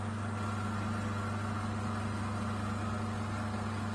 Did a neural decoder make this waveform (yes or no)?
no